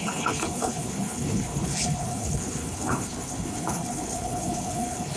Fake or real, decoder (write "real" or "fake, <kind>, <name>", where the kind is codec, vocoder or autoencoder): fake, codec, HILCodec